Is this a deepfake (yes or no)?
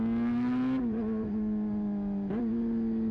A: no